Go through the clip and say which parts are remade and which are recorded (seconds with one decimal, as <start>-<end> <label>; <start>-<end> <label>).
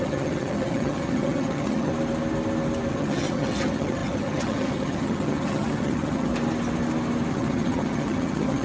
0.0-1.9 remade; 1.9-2.9 recorded; 2.9-6.3 remade; 6.3-7.3 recorded; 7.3-8.6 remade